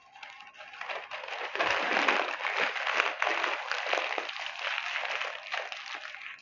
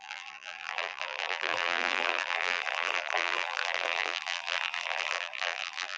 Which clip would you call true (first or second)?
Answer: first